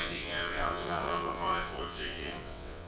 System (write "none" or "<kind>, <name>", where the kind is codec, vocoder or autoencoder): vocoder, WaveNeXt